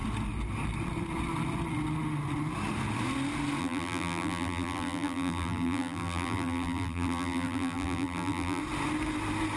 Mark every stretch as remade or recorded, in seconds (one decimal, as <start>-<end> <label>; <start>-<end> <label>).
0.0-3.6 recorded; 3.6-8.6 remade; 8.6-9.6 recorded